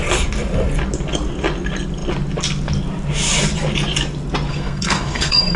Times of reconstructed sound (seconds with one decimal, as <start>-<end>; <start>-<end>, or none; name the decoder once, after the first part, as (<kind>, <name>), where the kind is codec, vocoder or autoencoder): 4.5-5.6 (codec, SNAC)